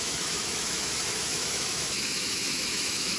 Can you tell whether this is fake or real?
fake